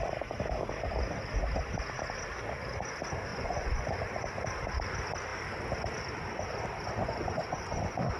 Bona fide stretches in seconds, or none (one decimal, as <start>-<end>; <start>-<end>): 0.0-3.3; 3.9-7.0